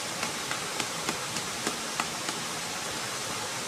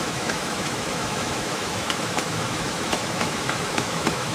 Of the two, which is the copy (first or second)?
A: second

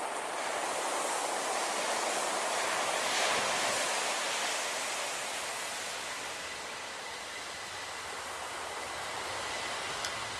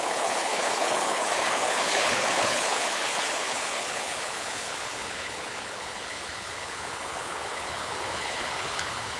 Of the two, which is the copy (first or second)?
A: second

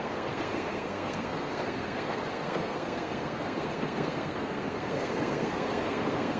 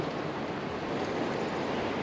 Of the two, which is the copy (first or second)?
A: first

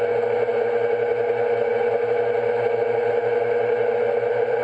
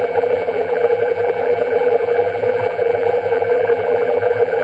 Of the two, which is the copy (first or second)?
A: second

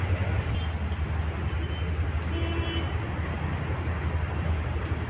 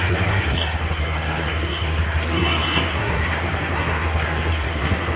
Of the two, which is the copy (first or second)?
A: second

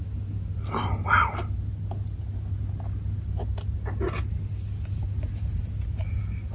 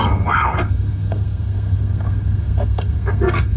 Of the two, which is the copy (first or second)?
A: second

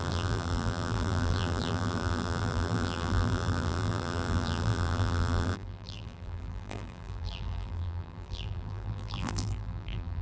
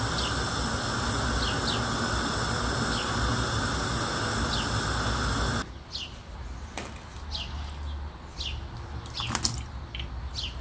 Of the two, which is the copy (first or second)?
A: first